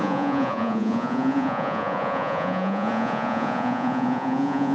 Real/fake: fake